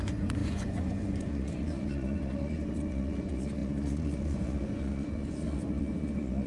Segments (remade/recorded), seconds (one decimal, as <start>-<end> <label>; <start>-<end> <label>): 0.0-6.5 remade